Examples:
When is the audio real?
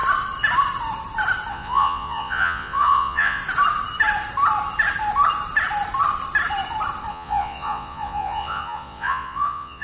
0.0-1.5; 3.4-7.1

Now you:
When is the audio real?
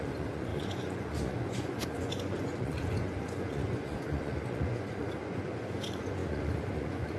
none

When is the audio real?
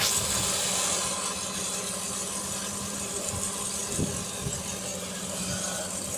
0.0-6.2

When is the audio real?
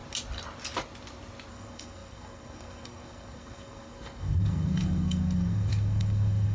0.0-1.5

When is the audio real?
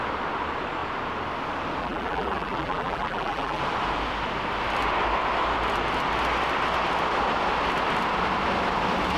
0.0-1.8; 3.6-9.2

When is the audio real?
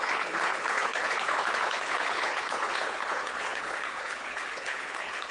none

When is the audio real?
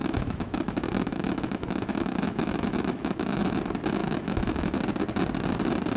3.6-4.0; 4.8-6.0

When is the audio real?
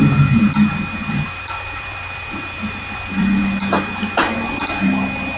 0.0-1.0; 3.4-5.4